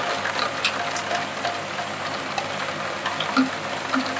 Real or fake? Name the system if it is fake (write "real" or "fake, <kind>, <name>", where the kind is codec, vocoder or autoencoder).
real